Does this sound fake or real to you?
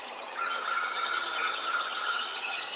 fake